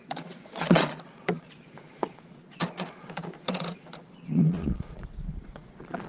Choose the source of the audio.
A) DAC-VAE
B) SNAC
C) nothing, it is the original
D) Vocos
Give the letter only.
D